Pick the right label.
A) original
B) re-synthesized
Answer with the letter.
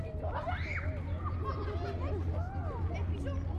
A